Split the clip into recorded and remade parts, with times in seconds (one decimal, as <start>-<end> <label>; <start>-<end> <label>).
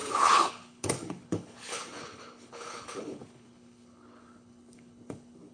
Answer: 0.0-5.5 remade